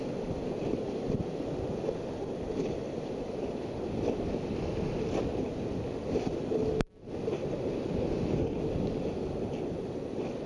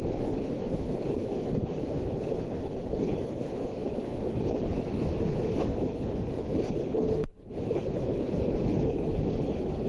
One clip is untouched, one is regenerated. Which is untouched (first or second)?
first